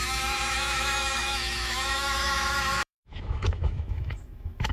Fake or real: fake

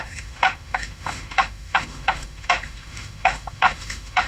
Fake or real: fake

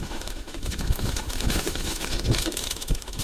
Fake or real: fake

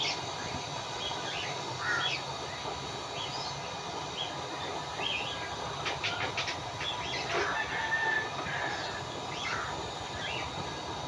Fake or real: real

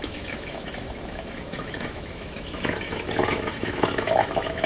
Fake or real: fake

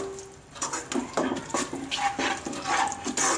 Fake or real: real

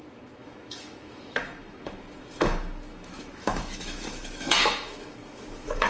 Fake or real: fake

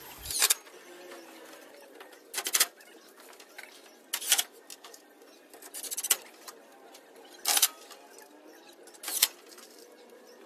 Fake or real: real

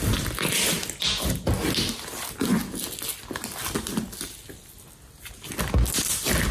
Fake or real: real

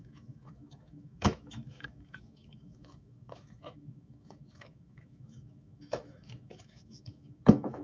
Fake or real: fake